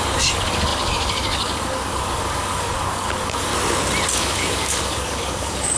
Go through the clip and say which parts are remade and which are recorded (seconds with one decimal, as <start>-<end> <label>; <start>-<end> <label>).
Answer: 0.0-3.5 remade; 3.5-4.1 recorded; 4.1-5.8 remade